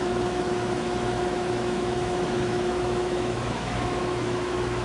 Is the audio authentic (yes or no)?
no